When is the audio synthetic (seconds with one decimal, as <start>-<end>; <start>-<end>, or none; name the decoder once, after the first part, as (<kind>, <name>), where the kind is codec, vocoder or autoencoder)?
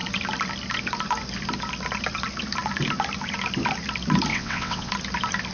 4.3-4.9 (vocoder, WaveNeXt)